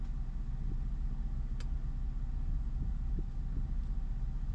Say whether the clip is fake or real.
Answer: real